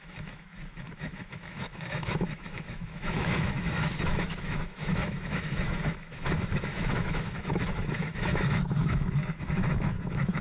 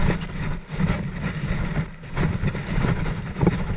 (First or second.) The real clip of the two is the second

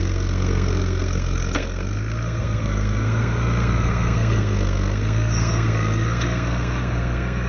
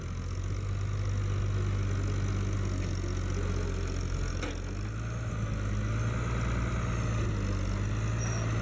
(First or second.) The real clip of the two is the second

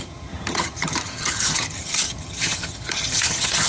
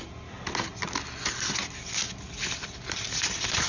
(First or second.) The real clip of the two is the second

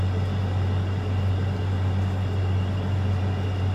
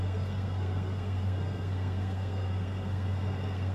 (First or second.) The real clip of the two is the first